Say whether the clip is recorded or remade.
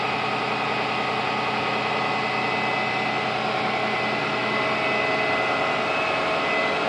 recorded